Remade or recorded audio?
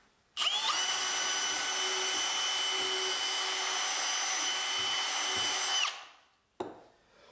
recorded